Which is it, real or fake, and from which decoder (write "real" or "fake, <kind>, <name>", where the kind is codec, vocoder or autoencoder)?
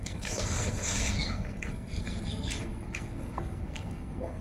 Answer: fake, codec, SNAC